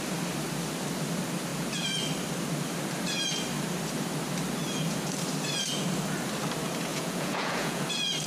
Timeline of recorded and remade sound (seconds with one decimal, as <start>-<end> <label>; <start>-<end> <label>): 0.0-6.9 recorded; 6.9-7.8 remade; 7.8-8.3 recorded